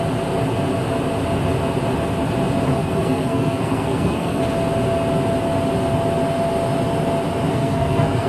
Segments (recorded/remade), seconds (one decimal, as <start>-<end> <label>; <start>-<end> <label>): 0.0-2.8 recorded; 2.8-4.4 remade; 4.4-7.5 recorded; 7.5-8.3 remade